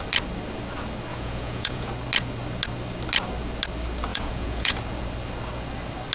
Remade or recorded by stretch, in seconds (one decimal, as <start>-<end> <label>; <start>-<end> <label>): 0.0-1.1 recorded; 1.1-1.9 remade; 1.9-4.1 recorded; 4.1-4.8 remade; 4.8-6.1 recorded